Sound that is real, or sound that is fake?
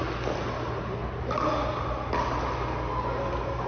real